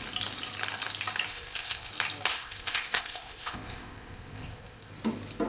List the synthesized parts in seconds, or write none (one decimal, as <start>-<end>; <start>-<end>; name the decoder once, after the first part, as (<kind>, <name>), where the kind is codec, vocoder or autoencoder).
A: 1.3-1.9 (codec, ZipCodec); 2.3-4.9

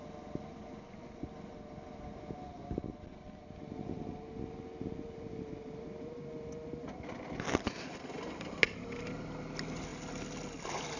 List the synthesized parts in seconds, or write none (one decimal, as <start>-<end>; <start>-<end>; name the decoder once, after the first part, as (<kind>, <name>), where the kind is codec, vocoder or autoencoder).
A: none

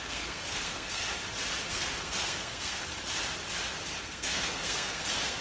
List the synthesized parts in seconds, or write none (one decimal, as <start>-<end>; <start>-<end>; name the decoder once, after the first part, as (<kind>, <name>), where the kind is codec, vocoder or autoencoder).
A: 0.0-1.1 (codec, SNAC); 1.7-2.9; 4.0-5.4